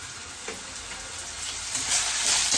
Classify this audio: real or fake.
real